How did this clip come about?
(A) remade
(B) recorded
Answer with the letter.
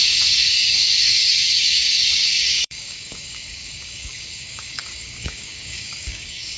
A